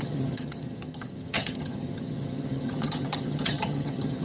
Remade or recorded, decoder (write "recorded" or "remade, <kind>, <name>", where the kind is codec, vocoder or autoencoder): remade, vocoder, HiFi-GAN